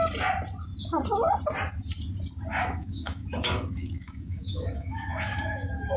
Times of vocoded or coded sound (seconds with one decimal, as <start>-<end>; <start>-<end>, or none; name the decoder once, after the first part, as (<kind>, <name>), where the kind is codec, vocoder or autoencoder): 2.5-6.0 (autoencoder, DAC-VAE)